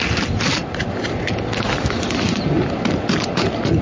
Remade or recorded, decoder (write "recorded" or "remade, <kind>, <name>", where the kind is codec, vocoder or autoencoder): recorded